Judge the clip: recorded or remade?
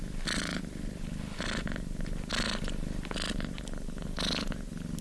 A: recorded